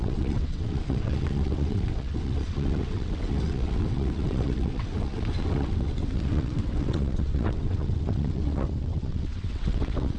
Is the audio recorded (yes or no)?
no